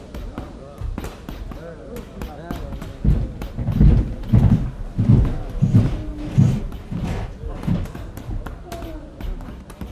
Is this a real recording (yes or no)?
yes